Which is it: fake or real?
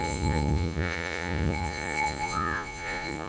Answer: fake